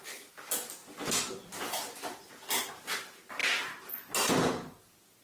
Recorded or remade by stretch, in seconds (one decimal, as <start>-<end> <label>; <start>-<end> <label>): 0.0-5.2 recorded